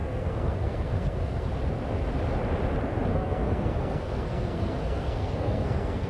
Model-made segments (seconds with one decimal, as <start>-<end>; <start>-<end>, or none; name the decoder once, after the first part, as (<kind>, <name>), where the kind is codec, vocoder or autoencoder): 0.0-1.5 (codec, SNAC); 3.1-6.1